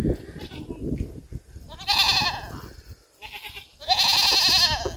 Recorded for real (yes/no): yes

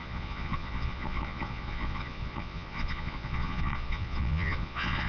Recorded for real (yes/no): no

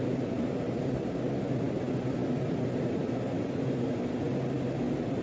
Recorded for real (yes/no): yes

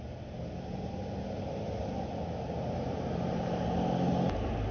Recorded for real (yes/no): yes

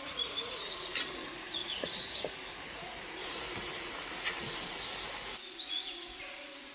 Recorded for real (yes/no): no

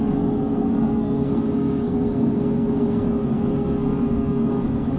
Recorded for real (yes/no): no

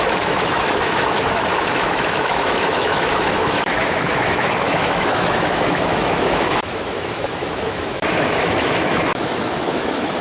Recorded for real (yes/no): no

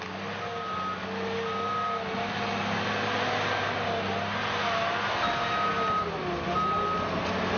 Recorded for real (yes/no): yes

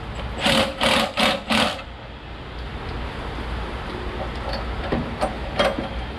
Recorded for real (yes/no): yes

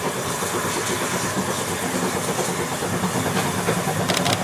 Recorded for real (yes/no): yes